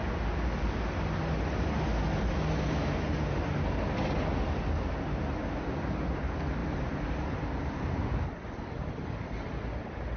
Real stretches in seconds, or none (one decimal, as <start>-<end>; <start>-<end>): 0.0-10.2